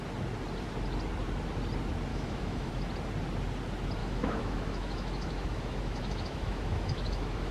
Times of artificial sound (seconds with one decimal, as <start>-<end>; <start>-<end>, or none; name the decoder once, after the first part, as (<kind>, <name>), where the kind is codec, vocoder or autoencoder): 2.1-2.7 (autoencoder, DAC-VAE); 4.0-7.5

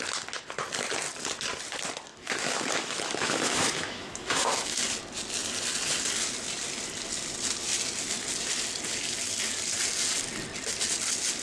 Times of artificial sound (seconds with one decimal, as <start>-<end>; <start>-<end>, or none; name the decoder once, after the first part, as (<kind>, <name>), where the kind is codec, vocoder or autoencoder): 2.1-4.8 (autoencoder, DAC-VAE)

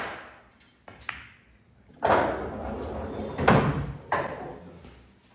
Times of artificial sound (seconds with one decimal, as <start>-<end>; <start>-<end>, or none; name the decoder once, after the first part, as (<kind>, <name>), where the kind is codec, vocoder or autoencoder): none

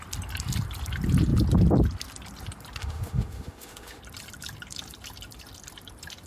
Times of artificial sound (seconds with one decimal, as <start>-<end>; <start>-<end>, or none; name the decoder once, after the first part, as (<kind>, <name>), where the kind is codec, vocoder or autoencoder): 2.8-4.0 (autoencoder, DAC-VAE)

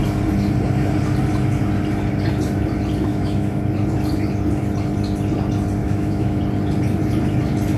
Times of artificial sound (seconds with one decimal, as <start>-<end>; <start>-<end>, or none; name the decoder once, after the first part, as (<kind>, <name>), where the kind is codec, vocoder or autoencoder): 3.1-3.6 (autoencoder, DAC-VAE); 5.8-6.4